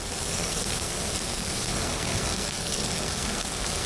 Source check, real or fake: fake